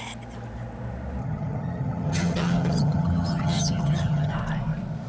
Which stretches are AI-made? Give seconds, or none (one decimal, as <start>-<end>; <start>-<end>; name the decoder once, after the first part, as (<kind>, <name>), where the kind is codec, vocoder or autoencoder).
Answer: 1.2-4.3 (vocoder, HiFi-GAN)

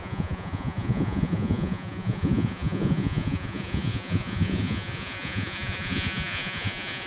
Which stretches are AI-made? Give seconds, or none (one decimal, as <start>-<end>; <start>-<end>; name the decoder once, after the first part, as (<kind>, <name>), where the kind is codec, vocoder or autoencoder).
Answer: 0.0-7.1 (vocoder, Vocos)